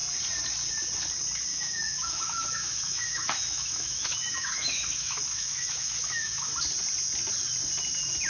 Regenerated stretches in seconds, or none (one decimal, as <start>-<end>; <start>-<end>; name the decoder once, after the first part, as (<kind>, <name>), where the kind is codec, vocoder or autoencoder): 1.5-6.5 (autoencoder, DAC-VAE)

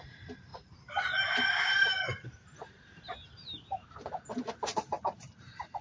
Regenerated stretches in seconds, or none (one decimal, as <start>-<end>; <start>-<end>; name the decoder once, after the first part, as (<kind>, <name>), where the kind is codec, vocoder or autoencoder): 0.0-5.8 (vocoder, BigVGAN v2)